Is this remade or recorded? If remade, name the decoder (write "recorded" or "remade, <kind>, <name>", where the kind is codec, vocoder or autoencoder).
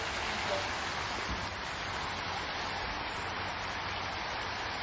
recorded